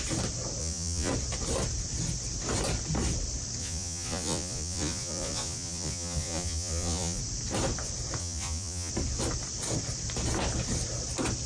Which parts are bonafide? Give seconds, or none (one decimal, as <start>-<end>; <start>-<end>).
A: 0.0-0.6; 1.1-3.6; 7.2-8.2; 8.9-11.5